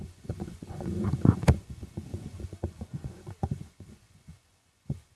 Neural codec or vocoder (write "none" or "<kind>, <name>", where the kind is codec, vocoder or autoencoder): vocoder, Vocos